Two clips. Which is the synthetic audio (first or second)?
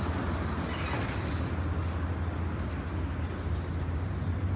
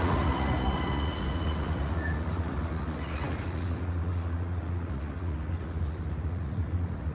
second